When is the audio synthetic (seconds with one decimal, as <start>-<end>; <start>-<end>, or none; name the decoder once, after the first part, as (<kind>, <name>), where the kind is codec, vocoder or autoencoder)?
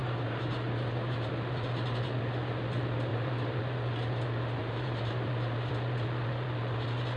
0.0-1.3 (vocoder, BigVGAN v2); 3.1-3.6; 4.6-5.7